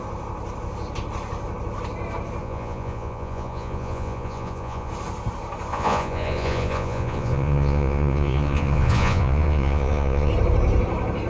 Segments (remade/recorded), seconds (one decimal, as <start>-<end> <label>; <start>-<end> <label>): 0.0-2.4 recorded; 2.4-4.9 remade; 4.9-5.7 recorded; 5.7-10.3 remade; 10.3-11.3 recorded